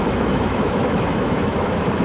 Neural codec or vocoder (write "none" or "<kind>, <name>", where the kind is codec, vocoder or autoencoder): autoencoder, DAC-VAE